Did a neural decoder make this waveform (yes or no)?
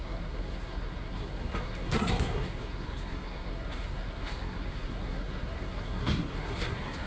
yes